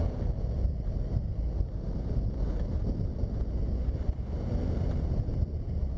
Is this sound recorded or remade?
recorded